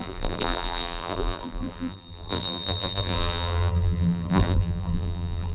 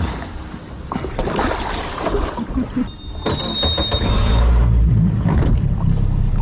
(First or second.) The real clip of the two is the second